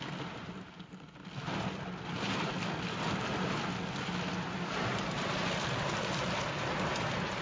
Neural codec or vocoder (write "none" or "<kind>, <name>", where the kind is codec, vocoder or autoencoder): none